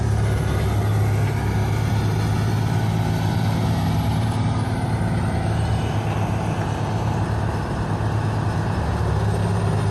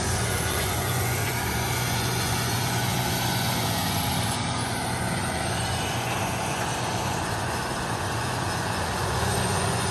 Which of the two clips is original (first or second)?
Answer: first